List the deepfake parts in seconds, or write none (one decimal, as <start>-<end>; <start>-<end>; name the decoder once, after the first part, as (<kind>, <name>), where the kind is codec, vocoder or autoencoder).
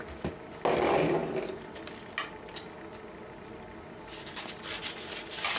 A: none